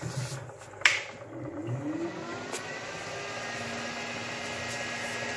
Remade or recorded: recorded